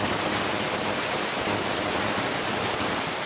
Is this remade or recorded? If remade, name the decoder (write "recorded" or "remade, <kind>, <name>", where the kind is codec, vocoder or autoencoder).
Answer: recorded